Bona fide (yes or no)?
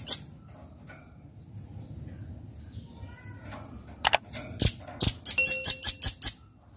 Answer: yes